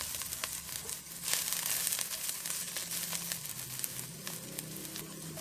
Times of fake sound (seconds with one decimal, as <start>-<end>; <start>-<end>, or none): none